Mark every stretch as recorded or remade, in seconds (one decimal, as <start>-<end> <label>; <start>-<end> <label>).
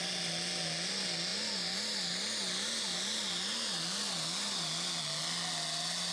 0.0-6.1 recorded